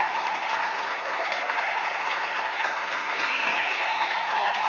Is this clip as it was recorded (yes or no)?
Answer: no